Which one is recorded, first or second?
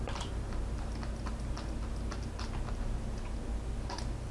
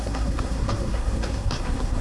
first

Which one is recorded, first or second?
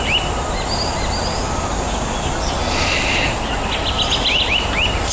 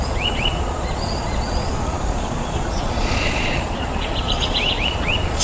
first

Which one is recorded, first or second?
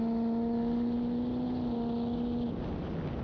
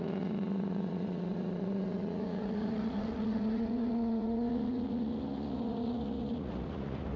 first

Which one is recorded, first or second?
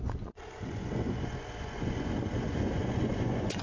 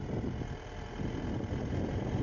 second